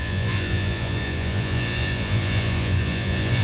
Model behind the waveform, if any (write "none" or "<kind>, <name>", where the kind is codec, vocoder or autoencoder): vocoder, Vocos